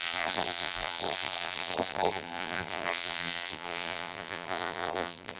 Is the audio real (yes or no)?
no